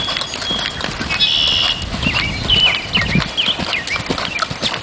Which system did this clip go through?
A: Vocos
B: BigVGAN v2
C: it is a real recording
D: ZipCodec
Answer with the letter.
C